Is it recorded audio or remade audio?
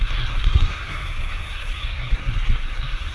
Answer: remade